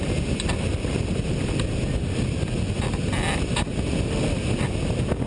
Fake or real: real